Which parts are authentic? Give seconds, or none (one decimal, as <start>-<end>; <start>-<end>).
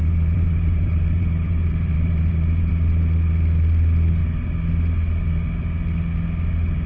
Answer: 2.7-6.9